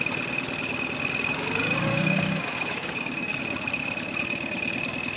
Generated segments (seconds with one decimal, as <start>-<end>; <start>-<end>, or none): 1.3-3.4

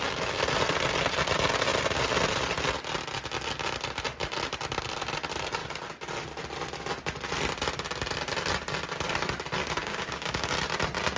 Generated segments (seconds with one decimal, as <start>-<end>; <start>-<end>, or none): 9.8-10.5

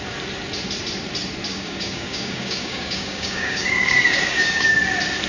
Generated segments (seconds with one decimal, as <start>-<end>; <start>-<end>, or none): 1.5-4.7